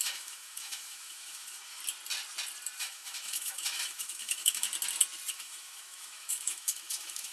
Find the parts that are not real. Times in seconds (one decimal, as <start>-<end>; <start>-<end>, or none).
0.0-1.8; 2.8-4.7; 5.3-7.3